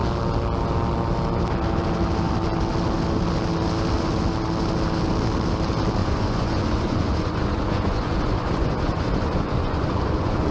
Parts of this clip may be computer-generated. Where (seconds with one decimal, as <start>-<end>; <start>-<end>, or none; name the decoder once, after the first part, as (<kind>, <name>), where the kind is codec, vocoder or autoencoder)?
6.0-10.5 (vocoder, Vocos)